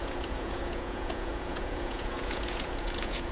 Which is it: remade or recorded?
remade